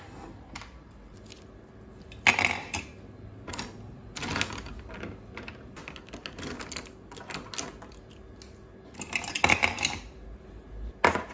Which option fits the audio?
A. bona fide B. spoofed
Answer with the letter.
A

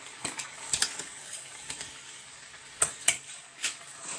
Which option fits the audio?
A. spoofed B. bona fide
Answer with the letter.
A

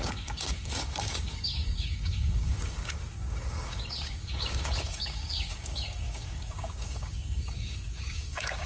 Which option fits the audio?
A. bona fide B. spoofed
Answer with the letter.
B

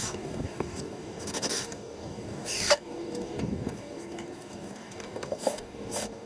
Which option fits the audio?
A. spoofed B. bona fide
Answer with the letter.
A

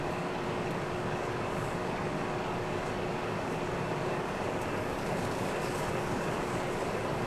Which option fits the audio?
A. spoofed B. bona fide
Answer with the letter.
A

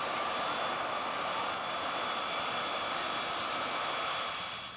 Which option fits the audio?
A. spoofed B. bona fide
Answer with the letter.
B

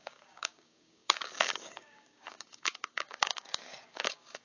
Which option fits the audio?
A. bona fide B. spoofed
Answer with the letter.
B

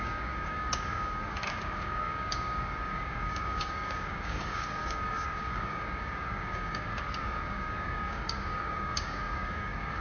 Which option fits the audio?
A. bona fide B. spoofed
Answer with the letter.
B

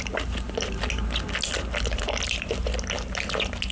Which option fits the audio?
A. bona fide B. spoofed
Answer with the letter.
A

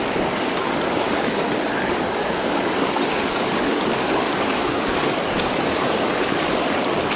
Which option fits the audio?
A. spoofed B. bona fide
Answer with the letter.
A